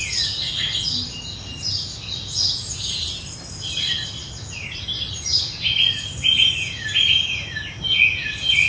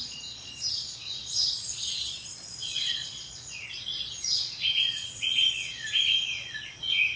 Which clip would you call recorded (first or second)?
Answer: first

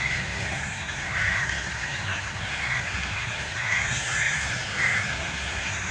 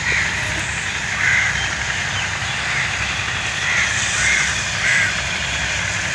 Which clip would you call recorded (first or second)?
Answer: second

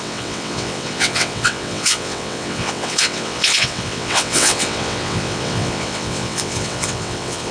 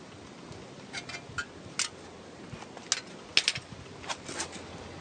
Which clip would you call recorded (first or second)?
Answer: second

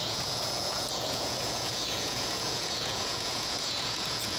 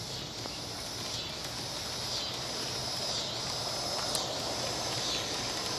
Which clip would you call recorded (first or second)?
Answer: second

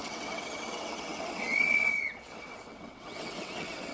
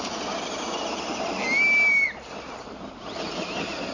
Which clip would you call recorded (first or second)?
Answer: second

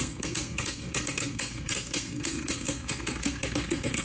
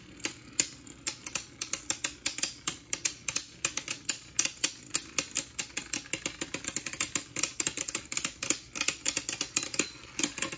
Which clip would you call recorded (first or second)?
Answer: second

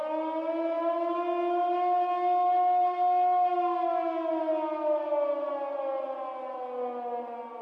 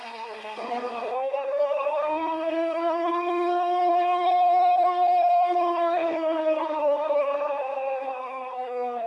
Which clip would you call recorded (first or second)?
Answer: first